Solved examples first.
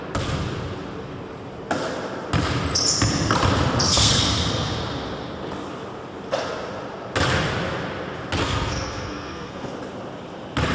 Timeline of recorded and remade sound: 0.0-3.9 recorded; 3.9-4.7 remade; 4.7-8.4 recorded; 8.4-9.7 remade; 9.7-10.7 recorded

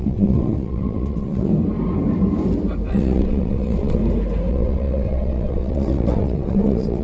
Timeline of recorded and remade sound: 0.0-1.5 remade; 1.5-2.9 recorded; 2.9-4.0 remade; 4.0-4.5 recorded; 4.5-7.0 remade

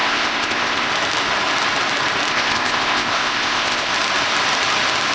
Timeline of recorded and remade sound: 0.0-0.9 remade; 0.9-2.3 recorded; 2.3-3.9 remade; 3.9-5.1 recorded

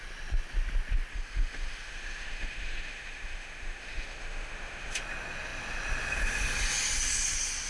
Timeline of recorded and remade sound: 0.0-1.1 recorded; 1.1-5.0 remade; 5.0-7.7 recorded

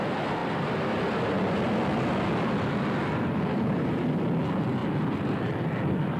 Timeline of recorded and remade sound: 0.0-0.4 recorded; 0.4-4.1 remade; 4.1-6.2 recorded

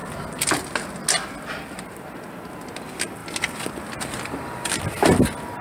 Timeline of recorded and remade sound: 0.0-5.6 recorded

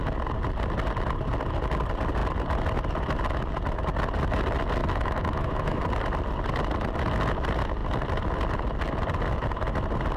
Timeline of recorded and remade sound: 0.0-4.8 recorded; 4.8-5.8 remade; 5.8-10.2 recorded

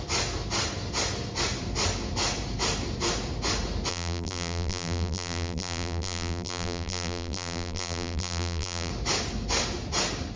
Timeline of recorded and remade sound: 0.0-3.9 recorded; 3.9-8.9 remade; 8.9-10.4 recorded